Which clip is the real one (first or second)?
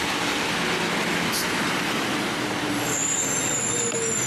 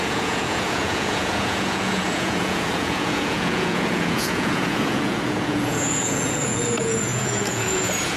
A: first